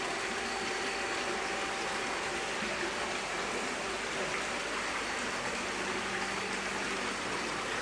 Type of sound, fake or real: real